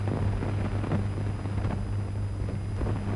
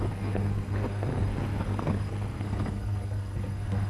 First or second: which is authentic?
first